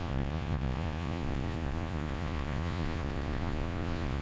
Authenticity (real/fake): fake